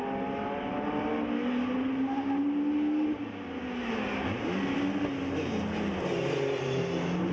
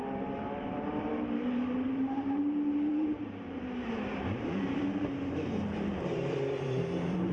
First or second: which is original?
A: first